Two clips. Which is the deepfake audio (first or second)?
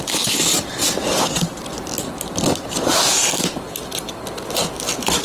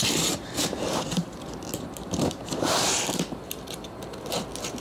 second